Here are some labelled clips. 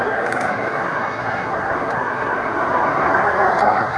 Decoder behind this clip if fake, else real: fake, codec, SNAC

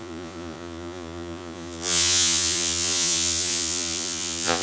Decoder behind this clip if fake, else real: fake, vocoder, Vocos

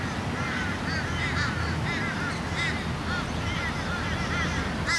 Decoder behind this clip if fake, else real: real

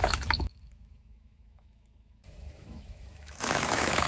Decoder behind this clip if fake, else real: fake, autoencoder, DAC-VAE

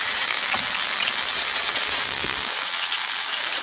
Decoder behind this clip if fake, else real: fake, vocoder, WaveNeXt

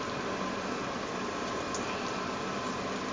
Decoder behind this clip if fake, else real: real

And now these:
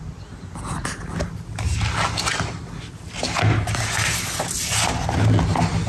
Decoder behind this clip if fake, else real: real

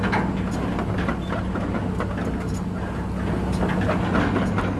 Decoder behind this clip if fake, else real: real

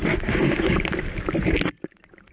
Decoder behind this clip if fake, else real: real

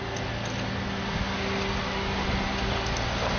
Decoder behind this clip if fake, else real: real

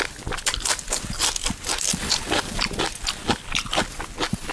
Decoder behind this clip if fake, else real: real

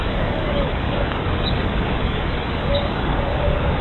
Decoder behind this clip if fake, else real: fake, codec, DAC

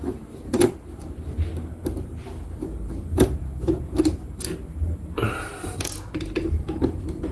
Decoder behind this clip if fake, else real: fake, vocoder, BigVGAN v2